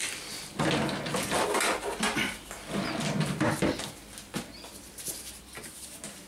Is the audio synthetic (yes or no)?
no